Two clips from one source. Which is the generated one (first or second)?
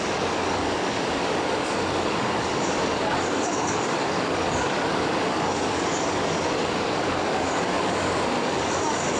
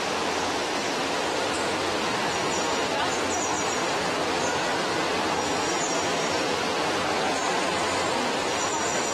first